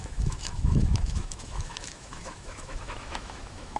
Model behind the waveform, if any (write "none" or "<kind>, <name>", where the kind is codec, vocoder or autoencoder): autoencoder, DAC-VAE